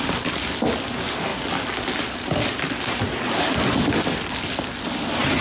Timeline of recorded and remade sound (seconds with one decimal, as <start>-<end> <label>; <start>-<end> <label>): 0.0-5.4 recorded